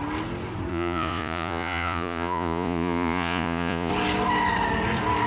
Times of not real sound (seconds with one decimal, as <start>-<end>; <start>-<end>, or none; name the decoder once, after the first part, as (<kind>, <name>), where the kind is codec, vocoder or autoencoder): 0.7-3.9 (vocoder, Vocos)